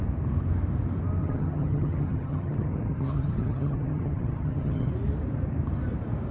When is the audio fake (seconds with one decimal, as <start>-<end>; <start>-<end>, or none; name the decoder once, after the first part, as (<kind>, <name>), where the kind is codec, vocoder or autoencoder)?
1.2-4.9 (vocoder, HiFi-GAN)